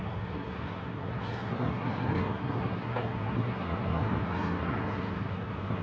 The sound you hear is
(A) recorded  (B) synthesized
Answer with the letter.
B